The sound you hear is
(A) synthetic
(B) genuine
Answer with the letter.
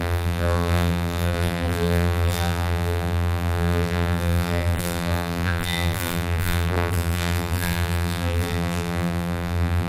A